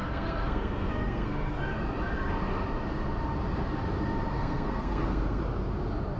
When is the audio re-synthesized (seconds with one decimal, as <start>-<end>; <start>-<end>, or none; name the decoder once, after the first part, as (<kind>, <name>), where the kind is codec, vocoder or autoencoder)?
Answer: 0.0-1.6 (codec, SNAC); 4.3-5.4